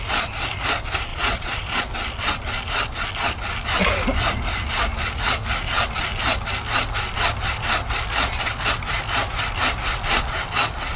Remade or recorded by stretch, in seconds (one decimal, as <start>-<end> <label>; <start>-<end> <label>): 0.0-1.1 recorded; 1.1-1.8 remade; 1.8-11.0 recorded